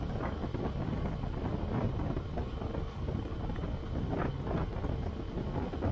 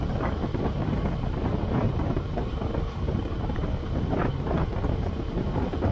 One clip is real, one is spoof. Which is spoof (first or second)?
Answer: second